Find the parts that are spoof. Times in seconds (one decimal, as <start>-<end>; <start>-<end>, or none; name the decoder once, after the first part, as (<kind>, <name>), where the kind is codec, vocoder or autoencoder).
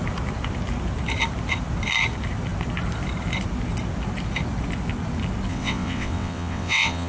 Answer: 5.5-7.1 (vocoder, WaveNeXt)